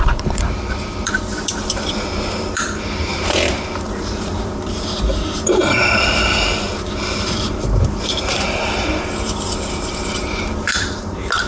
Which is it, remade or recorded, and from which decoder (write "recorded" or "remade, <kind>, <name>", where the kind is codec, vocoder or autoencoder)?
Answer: remade, vocoder, BigVGAN v2